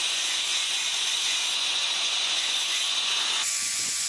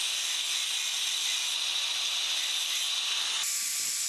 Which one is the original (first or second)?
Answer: second